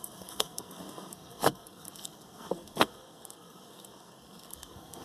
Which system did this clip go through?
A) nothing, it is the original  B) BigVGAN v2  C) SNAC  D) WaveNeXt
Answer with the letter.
C